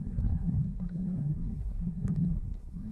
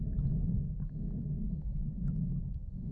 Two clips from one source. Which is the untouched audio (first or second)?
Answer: second